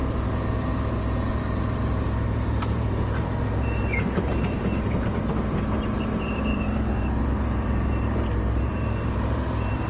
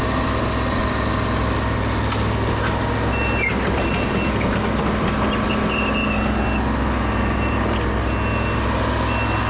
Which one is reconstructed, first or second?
first